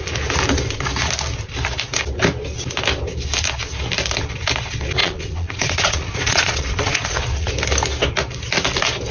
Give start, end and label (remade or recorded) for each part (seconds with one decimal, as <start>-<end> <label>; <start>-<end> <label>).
0.0-5.0 recorded; 5.0-7.5 remade; 7.5-9.1 recorded

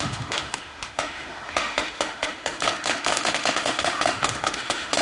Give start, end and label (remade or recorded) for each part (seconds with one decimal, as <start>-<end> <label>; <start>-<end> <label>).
0.0-5.0 remade

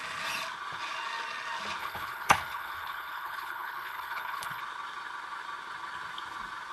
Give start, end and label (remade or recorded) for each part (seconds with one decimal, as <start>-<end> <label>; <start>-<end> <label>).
0.0-1.8 recorded; 1.8-4.6 remade; 4.6-6.7 recorded

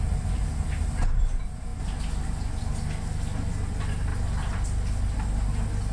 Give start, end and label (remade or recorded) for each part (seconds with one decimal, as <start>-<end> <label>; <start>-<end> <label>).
0.0-5.9 recorded

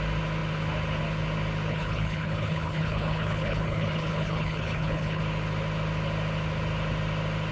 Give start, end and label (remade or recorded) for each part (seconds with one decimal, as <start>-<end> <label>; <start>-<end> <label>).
0.0-1.7 recorded; 1.7-5.2 remade; 5.2-7.5 recorded

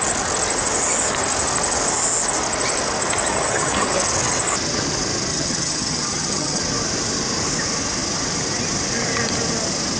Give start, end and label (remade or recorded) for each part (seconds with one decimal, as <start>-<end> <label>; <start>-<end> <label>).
0.0-3.3 recorded; 3.3-4.0 remade; 4.0-5.3 recorded; 5.3-6.6 remade; 6.6-10.0 recorded